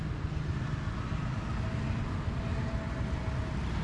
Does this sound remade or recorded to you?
recorded